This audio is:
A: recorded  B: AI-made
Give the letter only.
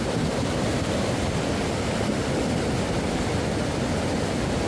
A